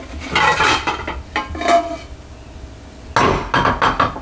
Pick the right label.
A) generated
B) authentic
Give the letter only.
B